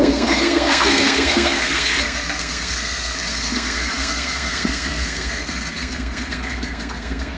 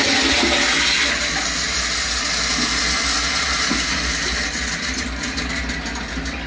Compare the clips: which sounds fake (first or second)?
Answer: first